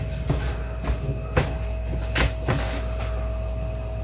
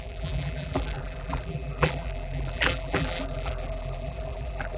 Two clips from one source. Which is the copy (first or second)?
second